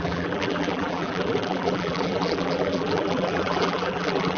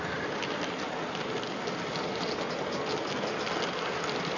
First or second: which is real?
second